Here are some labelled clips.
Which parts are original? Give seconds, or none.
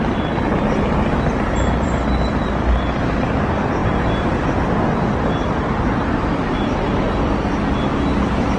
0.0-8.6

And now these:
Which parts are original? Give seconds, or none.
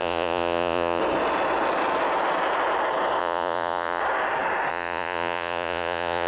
1.0-3.2; 4.0-4.7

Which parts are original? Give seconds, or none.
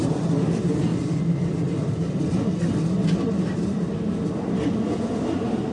0.0-5.7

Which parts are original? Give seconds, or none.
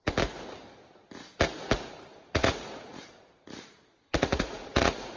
0.0-2.1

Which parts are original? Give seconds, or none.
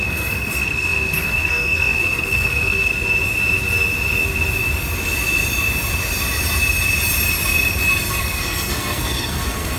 2.9-8.2